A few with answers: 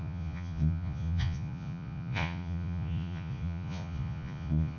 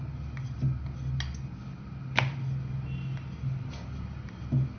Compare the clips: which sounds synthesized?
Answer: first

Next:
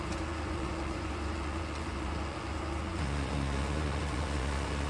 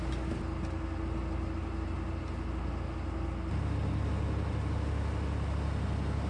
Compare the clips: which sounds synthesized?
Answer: first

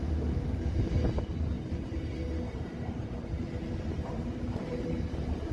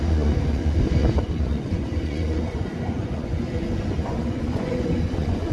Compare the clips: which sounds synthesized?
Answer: second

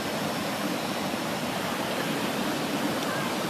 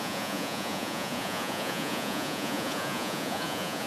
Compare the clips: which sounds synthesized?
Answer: second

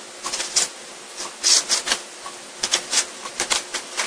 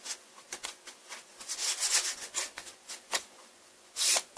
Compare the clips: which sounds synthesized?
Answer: second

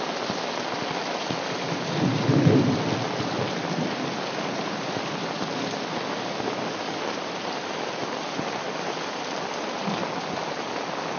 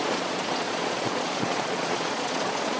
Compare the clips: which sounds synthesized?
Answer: second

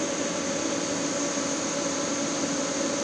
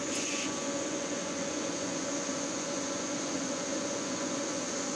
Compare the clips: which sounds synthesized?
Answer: second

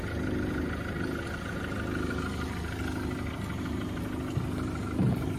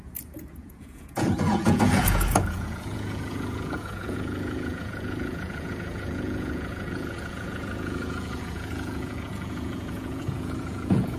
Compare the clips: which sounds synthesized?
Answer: second